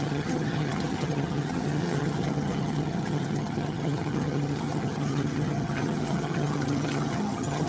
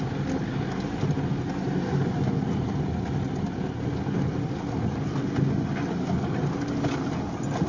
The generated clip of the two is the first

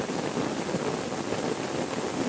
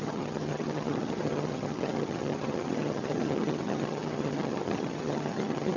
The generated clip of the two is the second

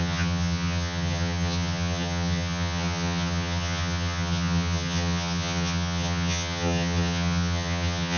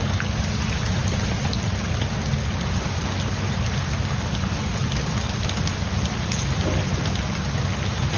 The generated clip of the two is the first